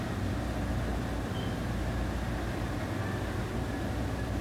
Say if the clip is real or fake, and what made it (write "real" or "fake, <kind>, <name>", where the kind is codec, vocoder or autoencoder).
real